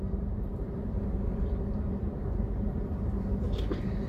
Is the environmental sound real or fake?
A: fake